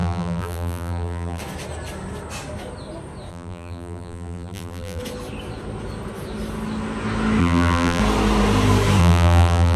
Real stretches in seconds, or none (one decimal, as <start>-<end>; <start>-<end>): 1.4-3.3; 5.0-7.4; 8.0-9.0

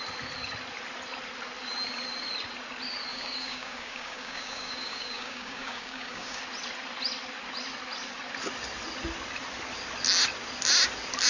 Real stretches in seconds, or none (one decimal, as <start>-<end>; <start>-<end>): 0.0-3.1; 6.4-11.3

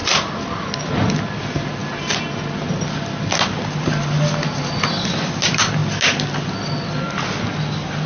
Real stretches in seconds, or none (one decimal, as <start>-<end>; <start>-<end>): 0.0-8.1

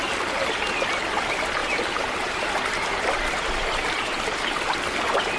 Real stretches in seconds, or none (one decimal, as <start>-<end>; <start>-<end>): 0.0-1.6; 2.4-5.4

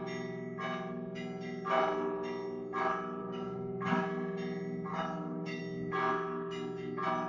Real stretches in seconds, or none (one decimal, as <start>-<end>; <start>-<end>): 0.0-3.2; 4.0-4.9; 5.6-7.3

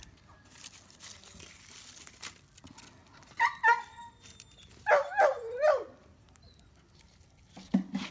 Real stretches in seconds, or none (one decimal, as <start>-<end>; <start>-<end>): 0.0-8.1